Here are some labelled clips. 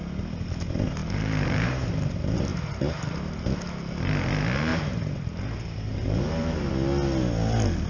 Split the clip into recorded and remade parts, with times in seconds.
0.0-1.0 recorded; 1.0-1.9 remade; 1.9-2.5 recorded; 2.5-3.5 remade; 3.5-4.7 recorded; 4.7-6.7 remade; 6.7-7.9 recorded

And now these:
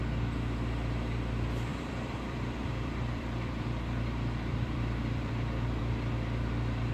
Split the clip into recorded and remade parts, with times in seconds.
0.0-1.7 recorded; 1.7-5.8 remade; 5.8-6.9 recorded

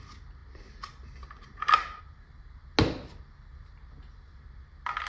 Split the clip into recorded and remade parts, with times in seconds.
0.0-5.1 recorded

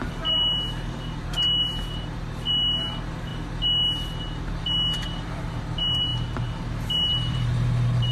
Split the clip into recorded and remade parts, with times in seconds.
0.0-8.1 remade

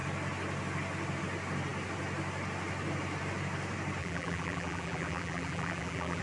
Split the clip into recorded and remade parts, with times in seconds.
0.0-4.0 recorded; 4.0-6.2 remade